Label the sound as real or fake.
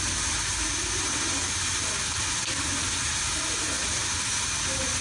real